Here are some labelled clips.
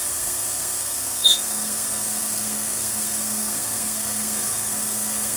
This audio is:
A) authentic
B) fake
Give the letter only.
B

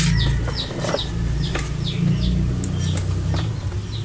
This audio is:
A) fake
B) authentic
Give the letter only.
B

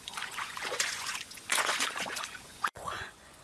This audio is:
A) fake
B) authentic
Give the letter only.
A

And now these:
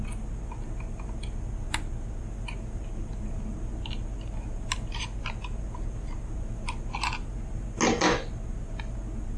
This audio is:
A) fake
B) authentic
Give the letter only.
B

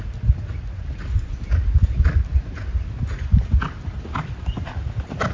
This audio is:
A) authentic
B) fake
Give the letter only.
A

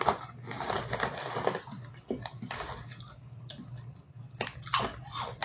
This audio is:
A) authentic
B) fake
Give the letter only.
A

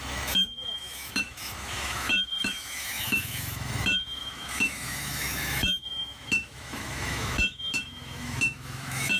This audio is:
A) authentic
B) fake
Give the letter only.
B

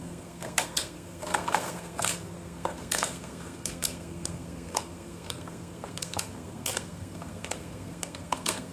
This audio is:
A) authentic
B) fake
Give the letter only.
B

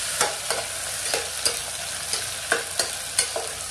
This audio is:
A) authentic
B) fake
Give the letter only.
A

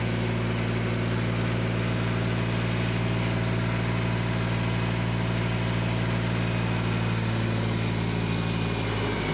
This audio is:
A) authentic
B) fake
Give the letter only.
A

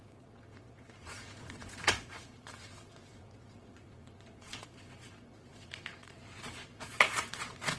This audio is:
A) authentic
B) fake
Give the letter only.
B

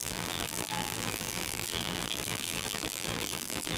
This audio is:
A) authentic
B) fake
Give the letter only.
B